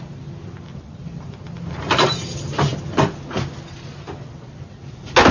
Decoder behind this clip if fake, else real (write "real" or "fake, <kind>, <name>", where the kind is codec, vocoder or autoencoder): real